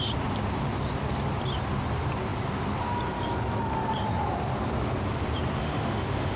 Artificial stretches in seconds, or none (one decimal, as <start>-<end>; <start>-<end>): 5.6-6.4